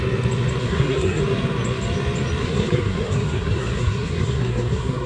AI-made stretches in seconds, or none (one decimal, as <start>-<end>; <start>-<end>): 0.6-1.2; 2.4-5.1